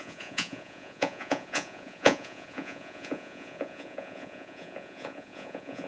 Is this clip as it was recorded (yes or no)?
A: no